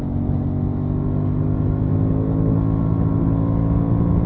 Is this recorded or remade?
recorded